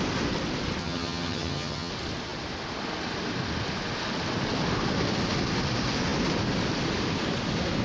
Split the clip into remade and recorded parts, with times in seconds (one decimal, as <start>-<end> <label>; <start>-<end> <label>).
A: 0.0-0.8 recorded; 0.8-1.9 remade; 1.9-7.8 recorded